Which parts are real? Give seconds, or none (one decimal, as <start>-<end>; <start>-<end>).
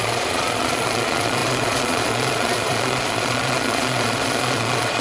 none